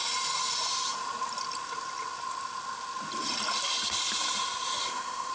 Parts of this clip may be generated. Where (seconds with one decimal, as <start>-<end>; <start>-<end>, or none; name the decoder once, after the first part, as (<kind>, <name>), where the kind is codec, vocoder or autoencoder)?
4.8-5.3 (codec, ZipCodec)